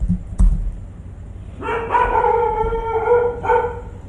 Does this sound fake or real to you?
real